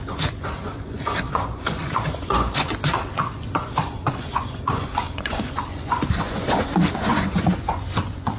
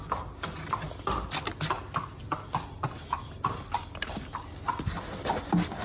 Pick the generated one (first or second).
first